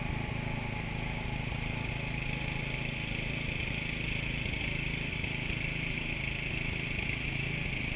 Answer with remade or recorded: recorded